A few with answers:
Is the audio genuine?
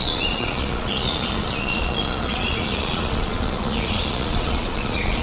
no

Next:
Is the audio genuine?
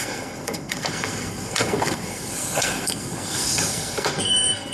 no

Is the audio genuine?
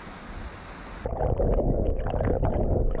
yes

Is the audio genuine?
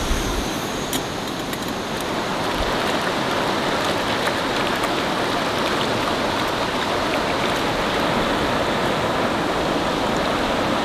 yes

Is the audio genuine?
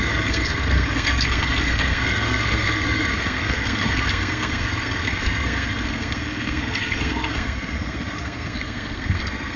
no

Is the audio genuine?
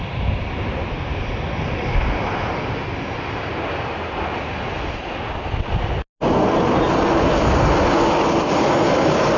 yes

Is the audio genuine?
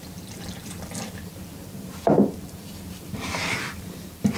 no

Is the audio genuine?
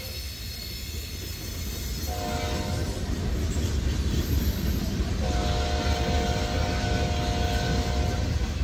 yes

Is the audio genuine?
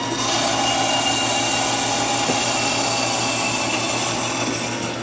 yes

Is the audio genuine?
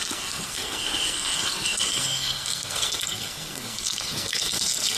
no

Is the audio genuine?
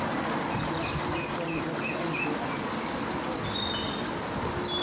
yes